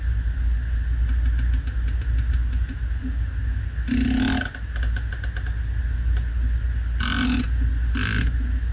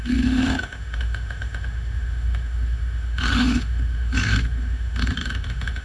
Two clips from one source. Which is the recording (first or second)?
first